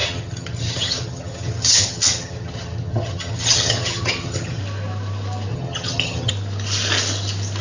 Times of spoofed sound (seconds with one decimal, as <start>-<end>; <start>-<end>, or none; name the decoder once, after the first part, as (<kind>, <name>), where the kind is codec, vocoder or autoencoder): 0.0-4.6 (vocoder, HiFi-GAN); 5.5-6.3